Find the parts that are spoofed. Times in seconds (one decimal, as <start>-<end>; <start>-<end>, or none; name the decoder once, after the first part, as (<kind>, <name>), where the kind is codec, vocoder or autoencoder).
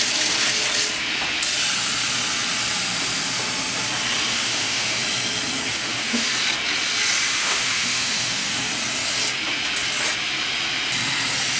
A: 4.3-5.0 (autoencoder, DAC-VAE); 5.7-6.3; 7.3-8.6